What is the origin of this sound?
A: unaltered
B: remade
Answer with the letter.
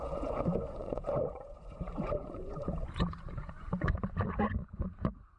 B